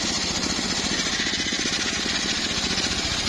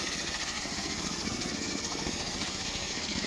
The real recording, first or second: first